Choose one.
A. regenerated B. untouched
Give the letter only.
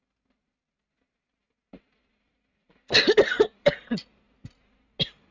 B